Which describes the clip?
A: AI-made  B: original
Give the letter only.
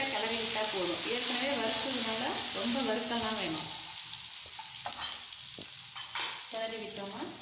B